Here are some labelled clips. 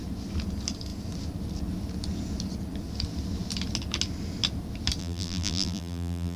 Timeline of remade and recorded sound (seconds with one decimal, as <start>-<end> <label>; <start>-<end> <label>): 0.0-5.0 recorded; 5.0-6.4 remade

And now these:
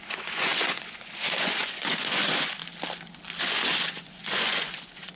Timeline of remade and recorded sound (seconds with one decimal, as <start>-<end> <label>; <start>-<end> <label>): 0.0-2.6 remade; 2.6-3.4 recorded; 3.4-5.2 remade

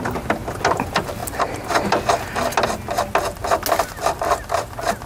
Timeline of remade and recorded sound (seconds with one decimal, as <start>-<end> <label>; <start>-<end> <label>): 0.0-5.1 recorded